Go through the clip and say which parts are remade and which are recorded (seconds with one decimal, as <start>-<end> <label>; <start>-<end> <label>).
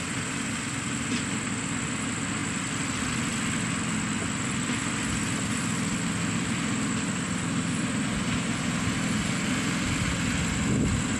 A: 0.0-11.2 recorded